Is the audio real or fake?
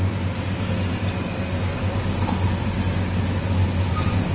real